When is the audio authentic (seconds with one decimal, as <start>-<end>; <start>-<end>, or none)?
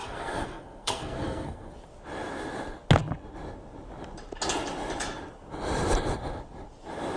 1.7-7.2